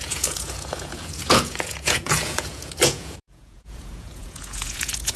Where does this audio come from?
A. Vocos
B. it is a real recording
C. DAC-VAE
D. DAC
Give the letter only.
A